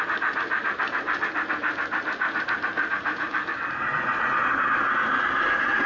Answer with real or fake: real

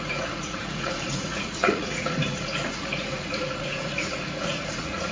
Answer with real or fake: fake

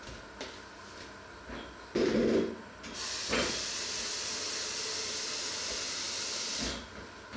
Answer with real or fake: real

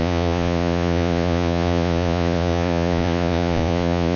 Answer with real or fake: fake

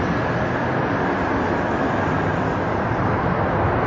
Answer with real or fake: real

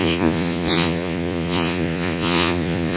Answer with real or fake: fake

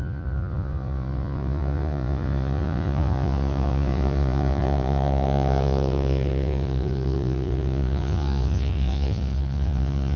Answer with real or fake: fake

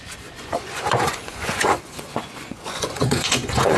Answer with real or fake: fake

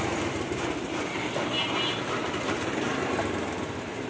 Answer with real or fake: real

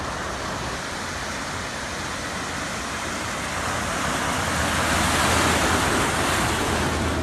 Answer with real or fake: real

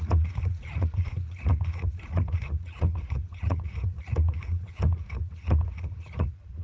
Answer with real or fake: fake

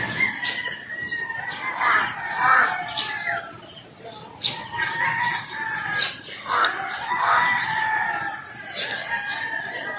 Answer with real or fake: real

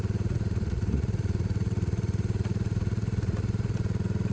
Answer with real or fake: fake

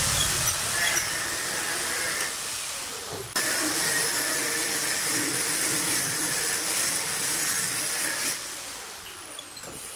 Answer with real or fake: real